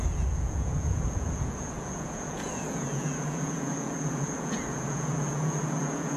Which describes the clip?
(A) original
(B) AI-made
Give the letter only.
B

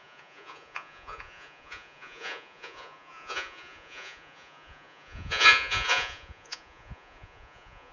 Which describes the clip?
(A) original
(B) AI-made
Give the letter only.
B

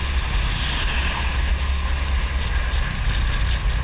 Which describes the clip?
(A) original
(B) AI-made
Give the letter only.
A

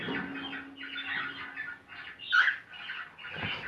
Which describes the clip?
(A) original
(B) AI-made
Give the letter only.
A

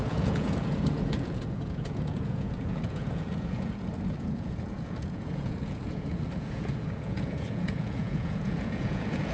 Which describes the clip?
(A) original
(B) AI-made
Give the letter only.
B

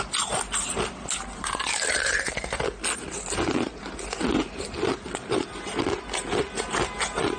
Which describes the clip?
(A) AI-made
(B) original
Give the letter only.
B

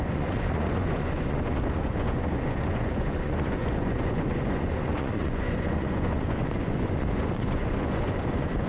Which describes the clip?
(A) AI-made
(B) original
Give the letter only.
A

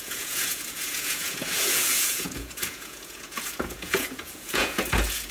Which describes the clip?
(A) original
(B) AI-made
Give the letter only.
B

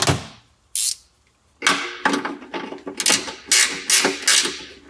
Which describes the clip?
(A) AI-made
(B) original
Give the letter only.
B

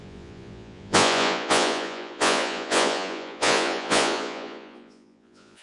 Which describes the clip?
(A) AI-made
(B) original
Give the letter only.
A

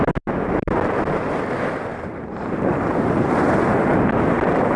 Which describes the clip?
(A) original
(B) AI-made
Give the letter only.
A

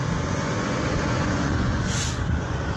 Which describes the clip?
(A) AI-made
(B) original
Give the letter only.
A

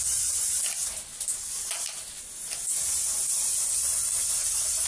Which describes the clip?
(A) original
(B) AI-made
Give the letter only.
A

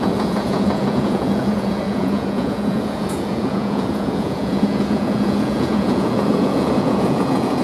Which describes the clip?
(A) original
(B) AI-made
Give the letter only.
B